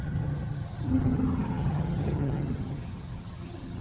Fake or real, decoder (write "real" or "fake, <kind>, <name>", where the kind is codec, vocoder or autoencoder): fake, vocoder, HiFi-GAN